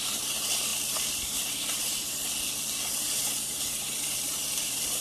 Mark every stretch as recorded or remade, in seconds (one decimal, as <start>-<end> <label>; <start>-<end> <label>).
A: 0.0-2.2 remade; 2.2-3.0 recorded; 3.0-5.0 remade